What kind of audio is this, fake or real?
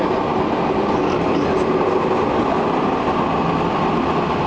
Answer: real